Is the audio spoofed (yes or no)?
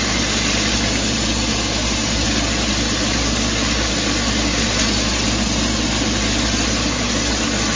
no